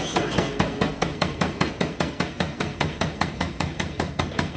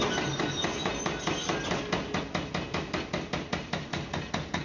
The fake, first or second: first